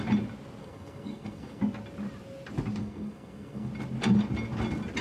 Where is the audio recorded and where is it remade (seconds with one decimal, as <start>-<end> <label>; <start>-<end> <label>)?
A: 0.0-0.6 recorded; 0.6-1.6 remade; 1.6-2.8 recorded; 2.8-3.7 remade; 3.7-5.0 recorded